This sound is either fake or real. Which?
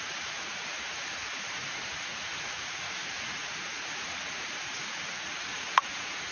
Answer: fake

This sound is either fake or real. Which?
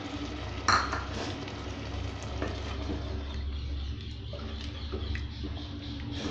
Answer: real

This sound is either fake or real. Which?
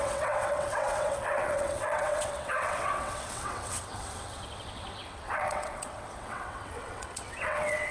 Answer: fake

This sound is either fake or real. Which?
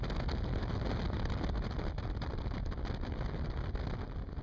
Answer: real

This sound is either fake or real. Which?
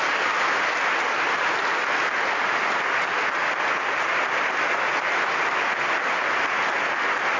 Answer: real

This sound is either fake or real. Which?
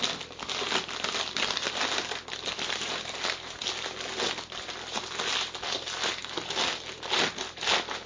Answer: real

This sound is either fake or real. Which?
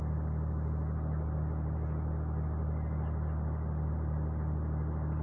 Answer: real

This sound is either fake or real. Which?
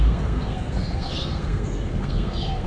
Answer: fake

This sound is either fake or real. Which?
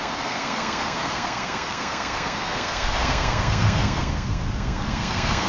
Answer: fake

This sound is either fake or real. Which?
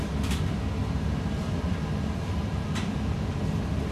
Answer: real